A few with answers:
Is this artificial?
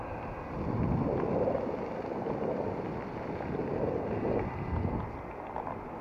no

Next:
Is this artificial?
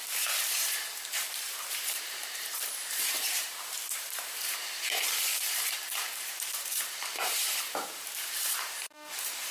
yes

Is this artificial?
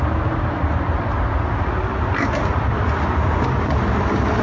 no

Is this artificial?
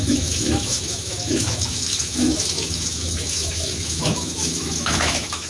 yes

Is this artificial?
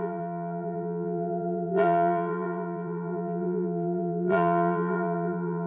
yes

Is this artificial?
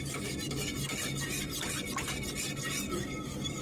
no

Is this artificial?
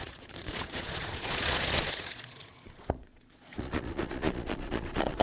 yes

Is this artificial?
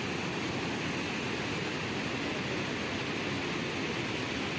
no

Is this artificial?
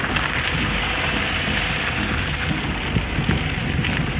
no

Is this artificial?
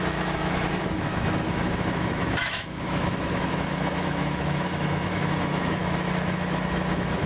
yes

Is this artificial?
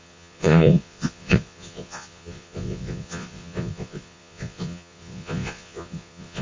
yes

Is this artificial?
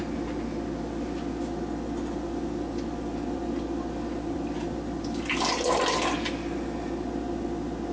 no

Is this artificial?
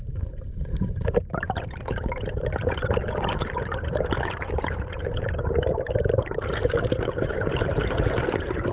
yes